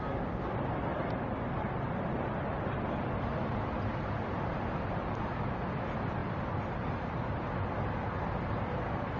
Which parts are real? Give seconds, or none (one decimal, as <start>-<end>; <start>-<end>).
0.0-9.2